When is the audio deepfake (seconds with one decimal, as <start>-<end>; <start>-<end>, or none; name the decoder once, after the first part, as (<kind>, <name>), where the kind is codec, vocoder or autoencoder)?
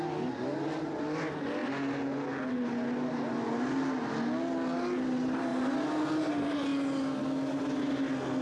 none